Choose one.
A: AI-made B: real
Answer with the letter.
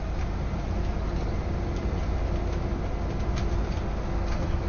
B